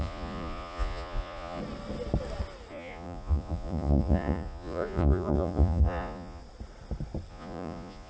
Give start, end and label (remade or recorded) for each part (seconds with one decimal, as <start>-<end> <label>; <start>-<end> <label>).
0.0-1.6 remade; 1.6-2.7 recorded; 2.7-6.4 remade; 6.4-7.3 recorded; 7.3-8.1 remade